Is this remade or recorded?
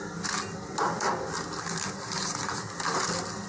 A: recorded